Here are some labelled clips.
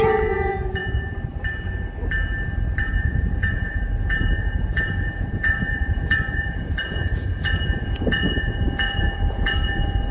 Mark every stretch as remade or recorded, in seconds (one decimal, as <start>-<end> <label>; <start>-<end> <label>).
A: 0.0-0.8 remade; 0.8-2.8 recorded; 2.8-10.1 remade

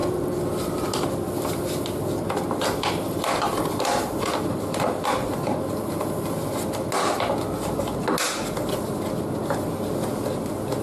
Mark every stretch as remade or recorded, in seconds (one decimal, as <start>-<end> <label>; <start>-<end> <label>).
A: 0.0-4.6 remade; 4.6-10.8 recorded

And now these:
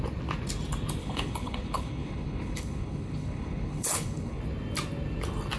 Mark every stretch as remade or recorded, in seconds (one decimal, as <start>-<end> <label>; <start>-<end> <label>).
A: 0.0-1.0 recorded; 1.0-4.4 remade; 4.4-5.6 recorded

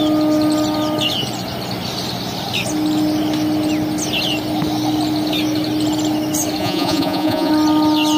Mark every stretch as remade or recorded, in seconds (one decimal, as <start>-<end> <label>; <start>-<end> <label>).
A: 0.0-6.6 recorded; 6.6-7.5 remade; 7.5-8.2 recorded

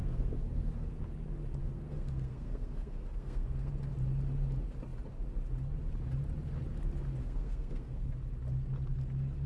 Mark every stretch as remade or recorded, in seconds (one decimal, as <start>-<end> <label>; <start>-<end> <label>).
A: 0.0-1.0 remade; 1.0-1.6 recorded; 1.6-3.7 remade; 3.7-7.2 recorded; 7.2-8.1 remade; 8.1-9.5 recorded

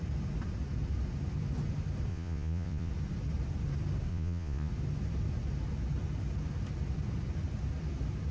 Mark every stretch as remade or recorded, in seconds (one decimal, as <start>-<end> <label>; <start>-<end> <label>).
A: 0.0-2.1 recorded; 2.1-2.9 remade; 2.9-4.1 recorded; 4.1-4.7 remade; 4.7-8.3 recorded

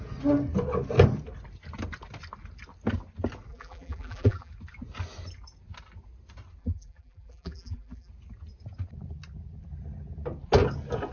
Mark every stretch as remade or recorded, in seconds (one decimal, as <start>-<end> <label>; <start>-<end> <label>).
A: 0.0-3.5 recorded; 3.5-4.5 remade; 4.5-6.6 recorded; 6.6-8.1 remade; 8.1-11.1 recorded